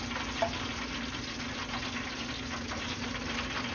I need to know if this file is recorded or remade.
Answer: recorded